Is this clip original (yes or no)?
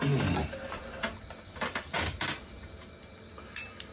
yes